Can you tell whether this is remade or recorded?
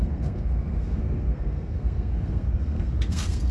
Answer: remade